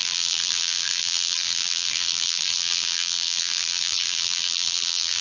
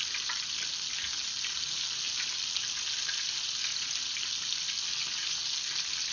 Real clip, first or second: second